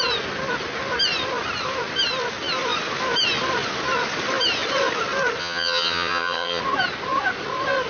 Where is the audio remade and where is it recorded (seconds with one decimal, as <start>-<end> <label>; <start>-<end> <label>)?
0.0-5.4 recorded; 5.4-6.6 remade; 6.6-7.9 recorded